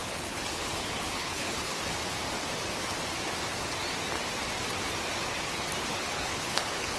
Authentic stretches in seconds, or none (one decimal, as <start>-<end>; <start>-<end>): 1.7-5.9